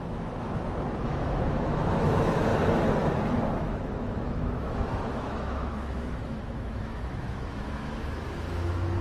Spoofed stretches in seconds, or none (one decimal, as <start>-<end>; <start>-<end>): 0.0-2.5; 3.6-9.0

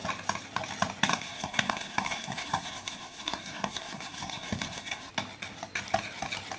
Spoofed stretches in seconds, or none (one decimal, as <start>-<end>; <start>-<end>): 1.1-5.1

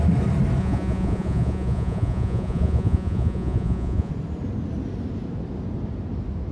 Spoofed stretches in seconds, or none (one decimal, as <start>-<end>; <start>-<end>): 0.6-4.1